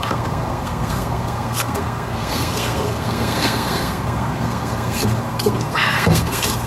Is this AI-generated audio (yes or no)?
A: yes